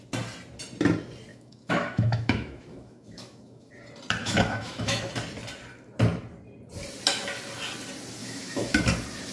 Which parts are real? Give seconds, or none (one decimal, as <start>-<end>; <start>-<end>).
0.0-1.3; 3.7-4.2; 5.1-8.2; 8.8-9.3